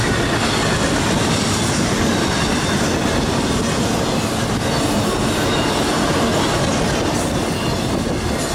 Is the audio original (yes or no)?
yes